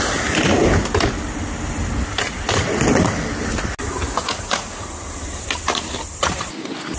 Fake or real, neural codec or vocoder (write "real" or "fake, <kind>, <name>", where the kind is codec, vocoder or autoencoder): real